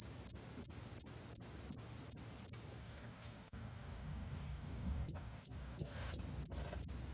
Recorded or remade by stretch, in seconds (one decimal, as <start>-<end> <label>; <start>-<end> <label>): 0.0-2.8 recorded; 2.8-6.2 remade; 6.2-7.1 recorded